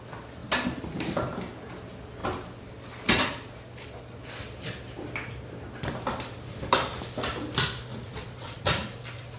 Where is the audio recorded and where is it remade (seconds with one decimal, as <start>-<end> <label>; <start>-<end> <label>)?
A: 0.0-7.9 recorded; 7.9-8.6 remade; 8.6-9.4 recorded

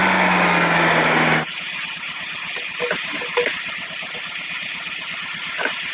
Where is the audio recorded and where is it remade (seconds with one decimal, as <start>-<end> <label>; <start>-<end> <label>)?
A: 0.0-5.9 recorded

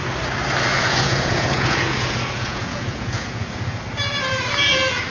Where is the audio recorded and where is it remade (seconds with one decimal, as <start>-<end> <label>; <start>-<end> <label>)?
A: 0.0-0.7 recorded; 0.7-3.8 remade; 3.8-5.1 recorded